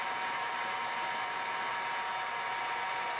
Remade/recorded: recorded